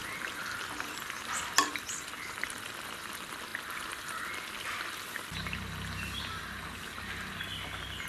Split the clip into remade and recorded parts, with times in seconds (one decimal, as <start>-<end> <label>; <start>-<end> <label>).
0.0-8.1 recorded